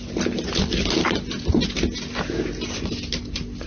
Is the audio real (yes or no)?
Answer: yes